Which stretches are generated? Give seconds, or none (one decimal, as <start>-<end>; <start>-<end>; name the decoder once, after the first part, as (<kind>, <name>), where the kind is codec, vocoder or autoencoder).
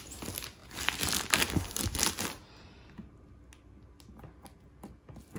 none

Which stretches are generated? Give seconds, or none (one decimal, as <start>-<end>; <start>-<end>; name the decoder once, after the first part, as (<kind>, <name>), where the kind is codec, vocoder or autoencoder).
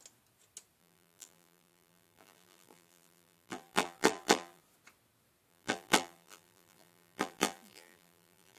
0.8-4.6 (vocoder, BigVGAN v2); 5.5-8.6